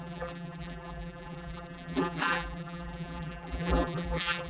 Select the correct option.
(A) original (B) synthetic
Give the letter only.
B